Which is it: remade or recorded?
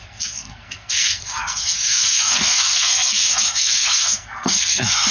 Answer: remade